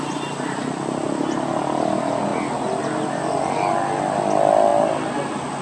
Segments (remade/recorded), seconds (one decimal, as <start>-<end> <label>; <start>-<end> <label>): 0.0-5.6 recorded